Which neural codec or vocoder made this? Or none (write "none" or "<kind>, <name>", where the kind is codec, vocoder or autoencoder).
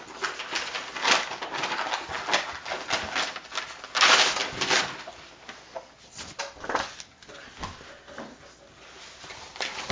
none